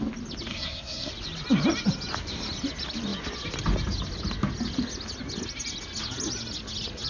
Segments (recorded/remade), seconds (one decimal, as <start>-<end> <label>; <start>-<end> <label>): 0.0-0.5 recorded; 0.5-1.1 remade; 1.1-7.1 recorded